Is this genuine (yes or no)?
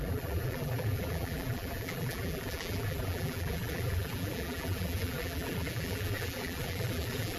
no